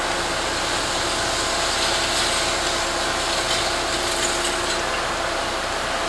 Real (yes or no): yes